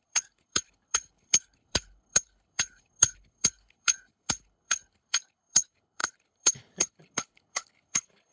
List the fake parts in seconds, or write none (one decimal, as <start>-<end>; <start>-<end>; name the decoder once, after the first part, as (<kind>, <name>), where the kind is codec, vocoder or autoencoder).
0.0-8.3 (codec, HILCodec)